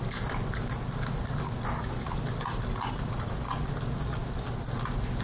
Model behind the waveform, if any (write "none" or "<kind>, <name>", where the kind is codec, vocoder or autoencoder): none